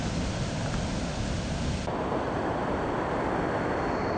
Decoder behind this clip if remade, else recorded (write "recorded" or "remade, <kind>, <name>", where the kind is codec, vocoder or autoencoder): recorded